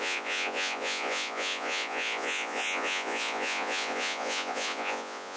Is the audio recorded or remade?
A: remade